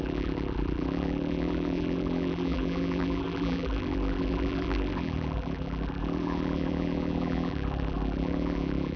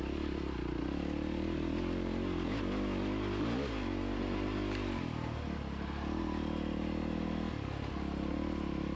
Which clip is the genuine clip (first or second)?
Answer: second